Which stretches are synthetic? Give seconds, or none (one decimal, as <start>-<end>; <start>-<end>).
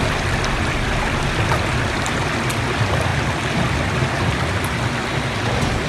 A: none